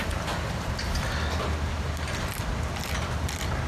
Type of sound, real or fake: real